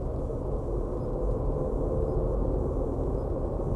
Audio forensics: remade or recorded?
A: recorded